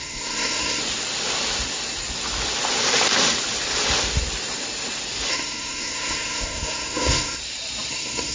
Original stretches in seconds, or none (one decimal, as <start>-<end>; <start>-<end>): 0.8-5.3; 7.4-7.9